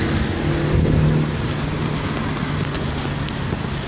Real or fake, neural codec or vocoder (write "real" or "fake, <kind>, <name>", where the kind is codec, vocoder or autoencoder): real